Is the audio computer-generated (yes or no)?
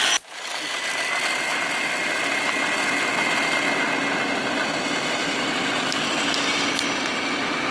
no